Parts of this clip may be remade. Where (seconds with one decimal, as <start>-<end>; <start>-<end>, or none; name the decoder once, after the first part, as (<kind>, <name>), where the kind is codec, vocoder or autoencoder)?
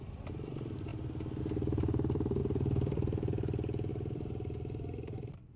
0.0-0.9 (vocoder, BigVGAN v2); 1.4-5.6